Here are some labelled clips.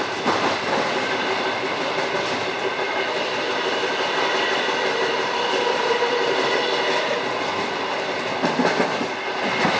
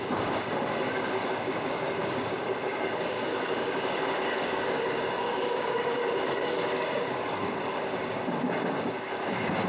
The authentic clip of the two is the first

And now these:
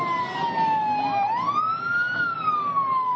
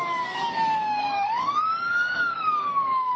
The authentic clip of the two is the first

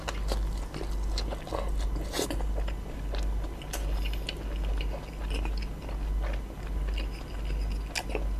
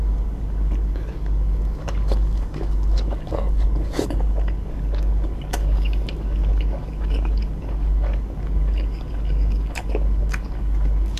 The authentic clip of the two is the first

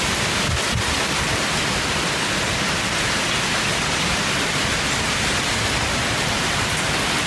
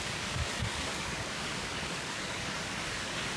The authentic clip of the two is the first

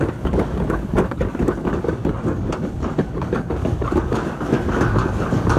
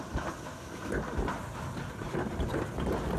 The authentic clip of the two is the second